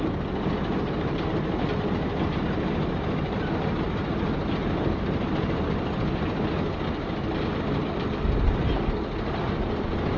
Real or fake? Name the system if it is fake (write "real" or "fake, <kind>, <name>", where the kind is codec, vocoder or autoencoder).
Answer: real